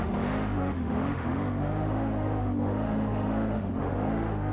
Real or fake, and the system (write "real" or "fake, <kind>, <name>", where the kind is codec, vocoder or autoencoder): fake, autoencoder, DAC-VAE